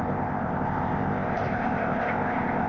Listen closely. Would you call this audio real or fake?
fake